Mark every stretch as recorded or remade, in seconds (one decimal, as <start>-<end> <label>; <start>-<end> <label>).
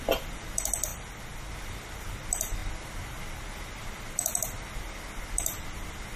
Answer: 0.0-6.2 recorded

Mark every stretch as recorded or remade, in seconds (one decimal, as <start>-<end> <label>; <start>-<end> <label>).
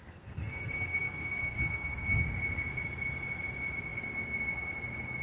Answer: 0.0-2.2 remade; 2.2-5.2 recorded